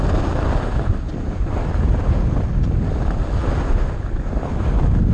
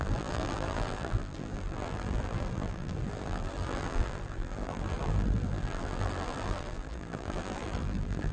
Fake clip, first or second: second